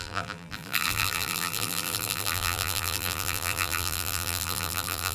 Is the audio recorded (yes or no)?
no